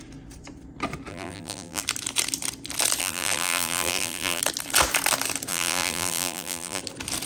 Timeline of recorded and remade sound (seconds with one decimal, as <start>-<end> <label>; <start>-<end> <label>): 0.0-1.1 recorded; 1.1-1.8 remade; 1.8-3.0 recorded; 3.0-4.4 remade; 4.4-5.5 recorded; 5.5-6.8 remade; 6.8-7.3 recorded